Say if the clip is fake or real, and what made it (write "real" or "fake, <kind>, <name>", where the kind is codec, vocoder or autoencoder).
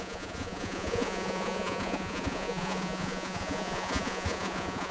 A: fake, vocoder, Vocos